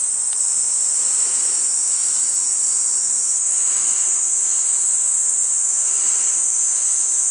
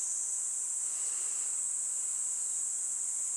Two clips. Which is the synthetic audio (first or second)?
first